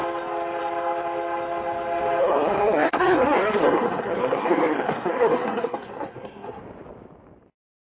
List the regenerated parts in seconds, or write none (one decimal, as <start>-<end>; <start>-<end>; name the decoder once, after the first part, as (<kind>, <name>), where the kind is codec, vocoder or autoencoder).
2.2-6.6 (codec, SNAC)